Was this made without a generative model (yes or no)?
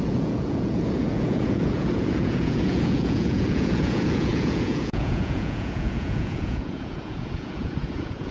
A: no